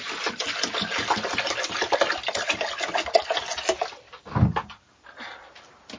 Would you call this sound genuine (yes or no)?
yes